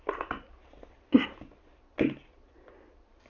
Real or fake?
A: real